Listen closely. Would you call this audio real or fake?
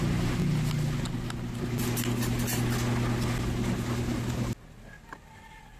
real